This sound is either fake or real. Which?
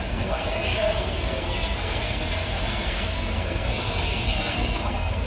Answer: fake